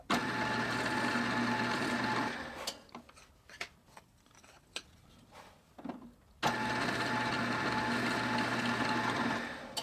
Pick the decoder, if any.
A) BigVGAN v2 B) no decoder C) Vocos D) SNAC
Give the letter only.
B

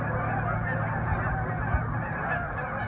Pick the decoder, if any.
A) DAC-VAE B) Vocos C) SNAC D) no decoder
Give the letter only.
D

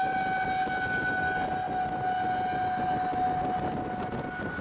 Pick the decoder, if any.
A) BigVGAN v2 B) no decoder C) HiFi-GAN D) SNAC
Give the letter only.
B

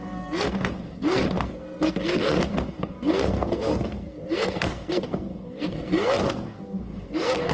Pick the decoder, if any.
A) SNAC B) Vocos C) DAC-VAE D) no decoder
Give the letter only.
A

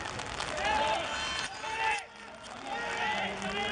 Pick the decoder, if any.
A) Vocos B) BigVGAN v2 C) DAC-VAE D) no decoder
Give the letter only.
D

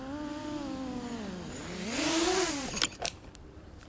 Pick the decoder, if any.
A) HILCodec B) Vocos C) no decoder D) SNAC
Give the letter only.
C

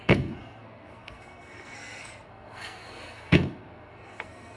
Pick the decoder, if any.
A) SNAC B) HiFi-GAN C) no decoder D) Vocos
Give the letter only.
A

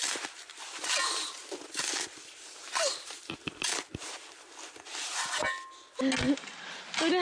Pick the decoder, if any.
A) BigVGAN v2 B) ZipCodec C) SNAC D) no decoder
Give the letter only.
D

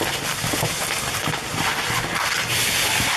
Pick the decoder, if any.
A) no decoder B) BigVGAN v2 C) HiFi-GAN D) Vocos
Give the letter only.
A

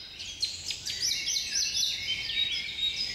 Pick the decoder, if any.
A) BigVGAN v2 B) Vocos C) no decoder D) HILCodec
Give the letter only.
C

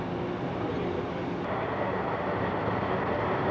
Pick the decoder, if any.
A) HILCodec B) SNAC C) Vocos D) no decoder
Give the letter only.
D